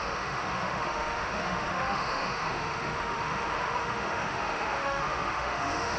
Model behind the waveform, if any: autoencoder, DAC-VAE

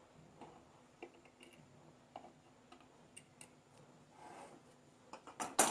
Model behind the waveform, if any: none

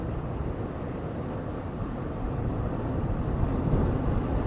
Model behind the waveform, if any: none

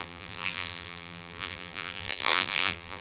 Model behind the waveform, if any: vocoder, BigVGAN v2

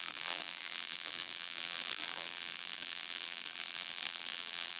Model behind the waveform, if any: vocoder, BigVGAN v2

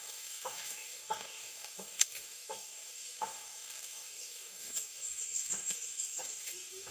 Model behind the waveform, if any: codec, DAC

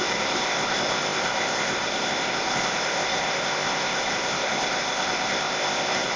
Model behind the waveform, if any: codec, ZipCodec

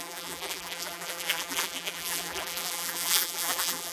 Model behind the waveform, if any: vocoder, BigVGAN v2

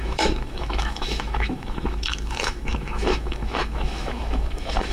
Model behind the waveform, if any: autoencoder, DAC-VAE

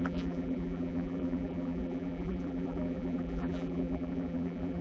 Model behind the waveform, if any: vocoder, BigVGAN v2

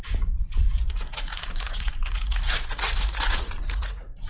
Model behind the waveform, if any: vocoder, Vocos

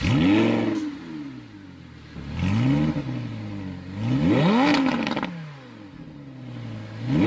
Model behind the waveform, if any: none